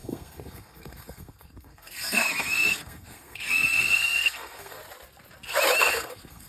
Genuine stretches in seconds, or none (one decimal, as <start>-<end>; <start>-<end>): 4.8-5.8